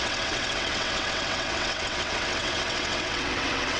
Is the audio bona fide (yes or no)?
no